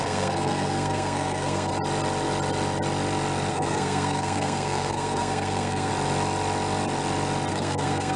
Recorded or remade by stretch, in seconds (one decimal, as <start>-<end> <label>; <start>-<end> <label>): 0.0-1.7 remade; 1.7-3.5 recorded; 3.5-5.9 remade; 5.9-7.5 recorded; 7.5-8.2 remade